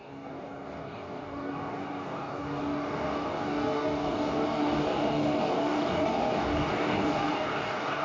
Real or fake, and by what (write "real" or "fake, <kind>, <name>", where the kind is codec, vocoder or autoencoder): fake, codec, DAC